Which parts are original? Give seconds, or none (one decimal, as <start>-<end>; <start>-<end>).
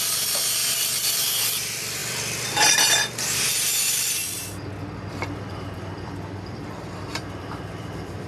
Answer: 4.2-5.1